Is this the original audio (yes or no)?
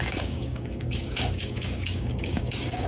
no